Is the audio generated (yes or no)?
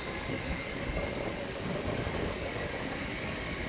yes